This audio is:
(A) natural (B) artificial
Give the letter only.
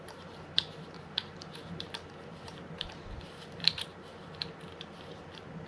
B